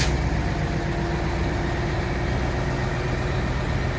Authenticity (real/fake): real